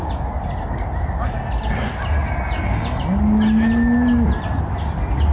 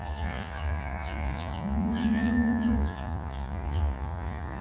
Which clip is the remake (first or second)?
second